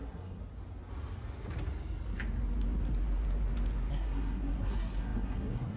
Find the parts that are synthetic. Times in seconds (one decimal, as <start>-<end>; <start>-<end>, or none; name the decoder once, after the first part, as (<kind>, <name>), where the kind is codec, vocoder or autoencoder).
0.0-0.4 (codec, SNAC); 3.9-5.8